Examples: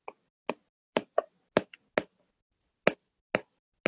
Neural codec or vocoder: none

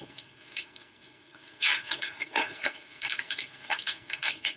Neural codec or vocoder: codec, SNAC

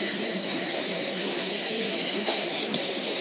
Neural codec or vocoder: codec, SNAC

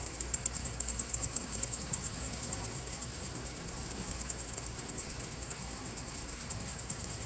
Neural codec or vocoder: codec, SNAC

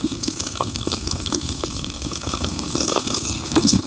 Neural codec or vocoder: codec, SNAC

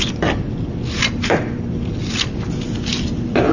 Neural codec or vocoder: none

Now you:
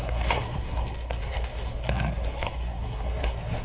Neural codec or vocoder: codec, SNAC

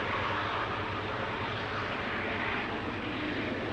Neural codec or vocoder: none